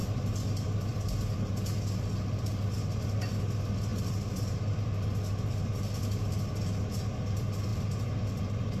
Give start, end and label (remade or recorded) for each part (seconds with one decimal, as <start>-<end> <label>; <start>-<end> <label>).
0.0-8.8 recorded